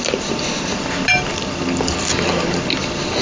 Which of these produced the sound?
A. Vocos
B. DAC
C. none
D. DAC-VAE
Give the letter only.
C